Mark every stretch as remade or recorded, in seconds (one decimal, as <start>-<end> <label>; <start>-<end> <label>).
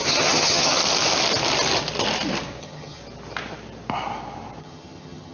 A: 0.0-0.8 remade; 0.8-2.6 recorded; 2.6-3.0 remade; 3.0-4.6 recorded; 4.6-5.3 remade